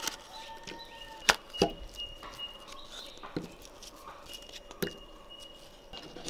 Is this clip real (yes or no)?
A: yes